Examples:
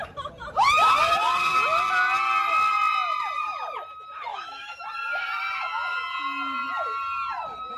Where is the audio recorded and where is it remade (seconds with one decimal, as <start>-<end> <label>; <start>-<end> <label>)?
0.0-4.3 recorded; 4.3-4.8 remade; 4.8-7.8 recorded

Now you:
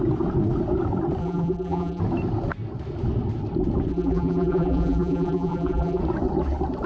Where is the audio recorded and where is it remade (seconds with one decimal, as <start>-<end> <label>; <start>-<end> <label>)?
0.0-1.2 recorded; 1.2-2.0 remade; 2.0-3.9 recorded; 3.9-6.0 remade; 6.0-6.9 recorded

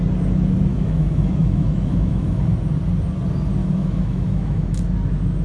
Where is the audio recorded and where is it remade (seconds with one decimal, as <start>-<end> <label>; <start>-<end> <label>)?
0.0-0.7 recorded; 0.7-2.5 remade; 2.5-3.6 recorded; 3.6-4.8 remade; 4.8-5.4 recorded